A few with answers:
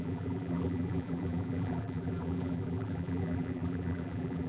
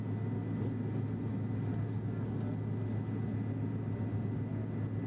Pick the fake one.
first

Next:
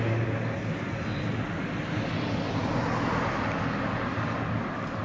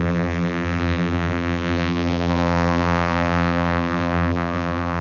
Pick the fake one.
second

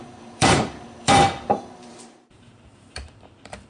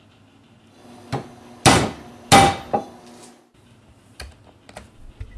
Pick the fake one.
first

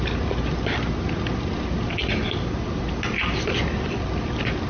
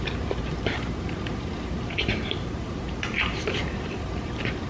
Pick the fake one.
second